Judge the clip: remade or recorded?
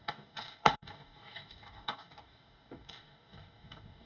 remade